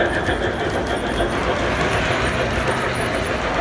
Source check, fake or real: real